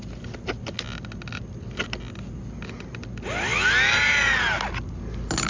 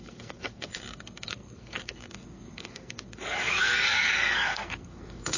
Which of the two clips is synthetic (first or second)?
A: second